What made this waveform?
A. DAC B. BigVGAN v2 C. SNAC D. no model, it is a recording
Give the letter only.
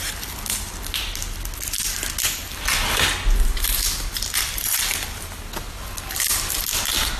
D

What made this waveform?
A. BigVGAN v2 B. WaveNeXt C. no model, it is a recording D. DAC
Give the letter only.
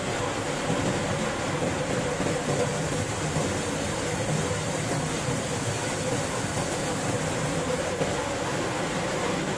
C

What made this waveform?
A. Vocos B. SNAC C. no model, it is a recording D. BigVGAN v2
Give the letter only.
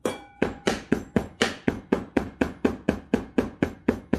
A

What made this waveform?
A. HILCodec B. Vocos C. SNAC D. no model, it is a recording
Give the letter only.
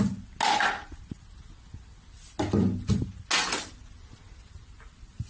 D